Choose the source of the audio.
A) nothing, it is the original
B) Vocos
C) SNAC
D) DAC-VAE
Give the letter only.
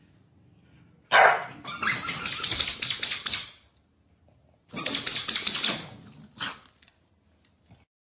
A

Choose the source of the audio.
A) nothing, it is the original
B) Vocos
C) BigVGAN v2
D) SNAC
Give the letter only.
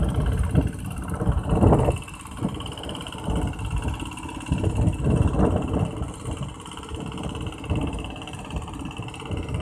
A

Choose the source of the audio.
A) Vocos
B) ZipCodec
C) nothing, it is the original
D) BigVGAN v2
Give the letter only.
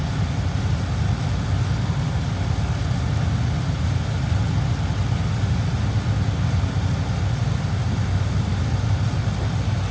C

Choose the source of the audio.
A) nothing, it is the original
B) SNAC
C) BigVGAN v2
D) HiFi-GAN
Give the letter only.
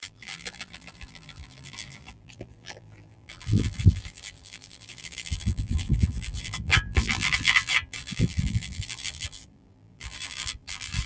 C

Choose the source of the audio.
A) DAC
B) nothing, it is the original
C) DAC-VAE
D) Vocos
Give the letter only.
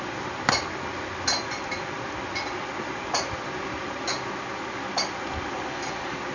B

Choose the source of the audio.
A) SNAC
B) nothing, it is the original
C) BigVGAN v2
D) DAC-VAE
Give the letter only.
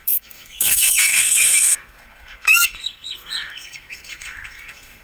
A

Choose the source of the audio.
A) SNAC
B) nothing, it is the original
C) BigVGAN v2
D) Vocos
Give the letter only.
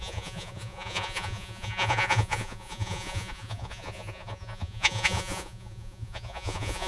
D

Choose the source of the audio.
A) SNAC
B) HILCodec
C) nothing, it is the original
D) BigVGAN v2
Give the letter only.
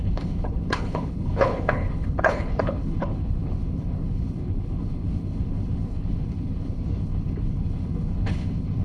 B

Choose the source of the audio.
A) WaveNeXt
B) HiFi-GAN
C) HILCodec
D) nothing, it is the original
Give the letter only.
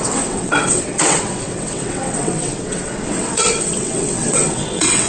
A